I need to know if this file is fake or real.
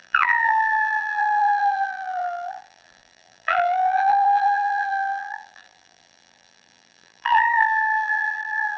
fake